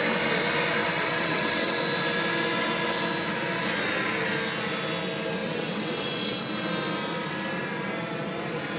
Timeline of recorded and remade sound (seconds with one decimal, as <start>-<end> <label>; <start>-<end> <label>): 0.0-0.8 recorded; 0.8-1.8 remade; 1.8-5.4 recorded; 5.4-6.5 remade; 6.5-8.8 recorded